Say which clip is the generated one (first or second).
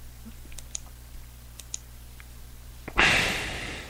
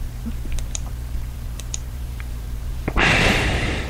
second